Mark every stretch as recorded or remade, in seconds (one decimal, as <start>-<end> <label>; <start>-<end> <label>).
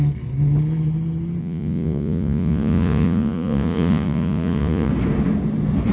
0.0-1.4 recorded; 1.4-4.9 remade; 4.9-5.9 recorded